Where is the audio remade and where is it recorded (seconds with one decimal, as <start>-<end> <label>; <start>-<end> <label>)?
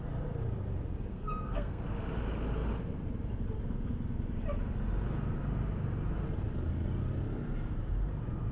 0.0-1.1 recorded; 1.1-1.8 remade; 1.8-8.5 recorded